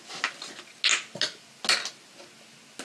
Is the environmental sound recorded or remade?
recorded